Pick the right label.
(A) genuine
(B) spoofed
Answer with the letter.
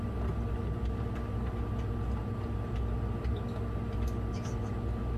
A